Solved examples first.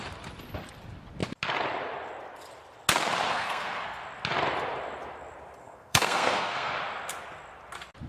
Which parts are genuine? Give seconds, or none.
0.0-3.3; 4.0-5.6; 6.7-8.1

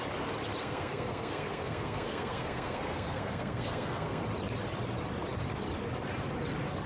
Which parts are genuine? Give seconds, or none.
0.0-0.6; 4.2-6.9

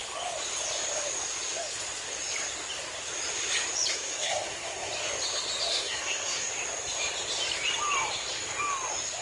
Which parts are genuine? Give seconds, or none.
0.0-3.9; 4.9-5.7; 6.5-9.2

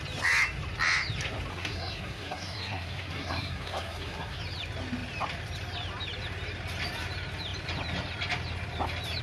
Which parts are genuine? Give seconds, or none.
0.0-1.5; 4.4-9.2

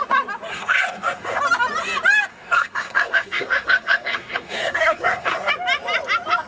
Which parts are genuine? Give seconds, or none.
0.0-0.5; 1.4-2.3; 5.5-6.5